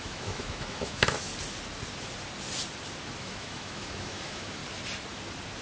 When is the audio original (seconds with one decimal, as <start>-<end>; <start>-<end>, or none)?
1.3-3.2; 4.6-5.6